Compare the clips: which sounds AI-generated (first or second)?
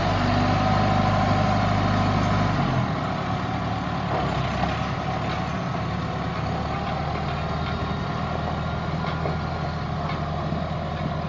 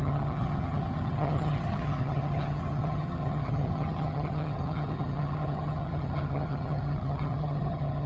second